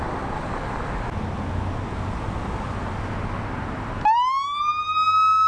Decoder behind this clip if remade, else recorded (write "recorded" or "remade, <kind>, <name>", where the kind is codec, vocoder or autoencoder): recorded